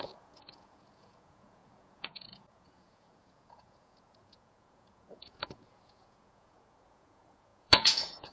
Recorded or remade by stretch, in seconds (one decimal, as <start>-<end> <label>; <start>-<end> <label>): 0.0-8.3 remade